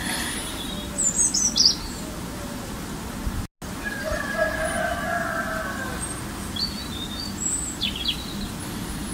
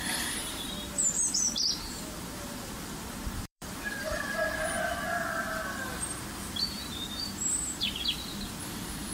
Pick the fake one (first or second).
second